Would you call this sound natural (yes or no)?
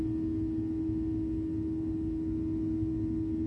yes